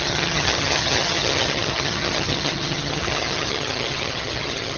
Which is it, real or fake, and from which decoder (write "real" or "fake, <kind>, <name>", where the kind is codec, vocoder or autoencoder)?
fake, vocoder, HiFi-GAN